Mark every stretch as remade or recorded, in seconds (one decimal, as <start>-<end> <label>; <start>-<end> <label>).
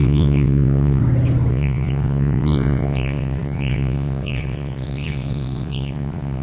0.0-1.0 remade; 1.0-1.5 recorded; 1.5-6.4 remade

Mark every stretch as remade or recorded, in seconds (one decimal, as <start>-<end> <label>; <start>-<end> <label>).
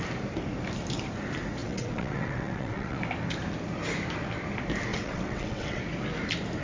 0.0-1.6 recorded; 1.6-3.0 remade; 3.0-4.9 recorded; 4.9-5.8 remade; 5.8-6.6 recorded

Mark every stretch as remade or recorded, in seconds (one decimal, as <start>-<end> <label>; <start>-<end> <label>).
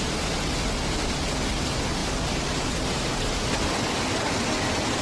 0.0-5.0 recorded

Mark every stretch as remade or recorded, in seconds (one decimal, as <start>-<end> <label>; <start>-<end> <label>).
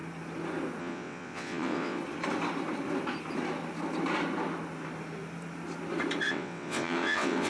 0.0-0.8 recorded; 0.8-2.0 remade; 2.0-6.3 recorded; 6.3-7.5 remade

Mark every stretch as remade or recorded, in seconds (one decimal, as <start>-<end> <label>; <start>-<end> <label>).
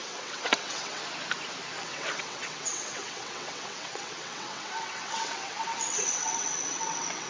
0.0-1.0 remade; 1.0-1.8 recorded; 1.8-7.3 remade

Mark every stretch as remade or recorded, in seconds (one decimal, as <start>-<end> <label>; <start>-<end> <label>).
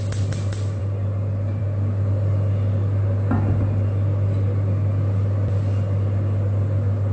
0.0-7.1 recorded